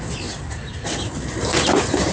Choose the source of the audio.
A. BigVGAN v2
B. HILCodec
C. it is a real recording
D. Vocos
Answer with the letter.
A